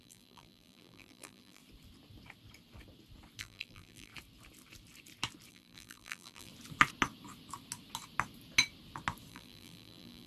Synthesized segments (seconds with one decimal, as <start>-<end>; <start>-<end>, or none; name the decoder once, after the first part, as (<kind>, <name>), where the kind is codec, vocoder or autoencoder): 0.0-1.6 (vocoder, BigVGAN v2); 3.4-4.1; 5.5-6.5; 9.3-10.3